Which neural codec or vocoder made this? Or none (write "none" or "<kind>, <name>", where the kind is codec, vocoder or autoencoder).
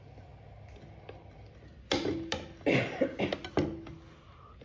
none